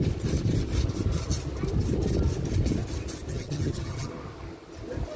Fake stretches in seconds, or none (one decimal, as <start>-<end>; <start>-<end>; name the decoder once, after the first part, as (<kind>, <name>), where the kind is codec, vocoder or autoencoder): 3.3-4.1 (vocoder, HiFi-GAN)